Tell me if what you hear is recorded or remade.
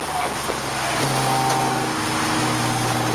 recorded